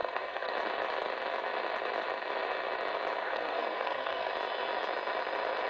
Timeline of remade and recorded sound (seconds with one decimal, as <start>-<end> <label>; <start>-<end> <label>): 0.0-0.5 remade; 0.5-3.2 recorded; 3.2-4.3 remade; 4.3-5.7 recorded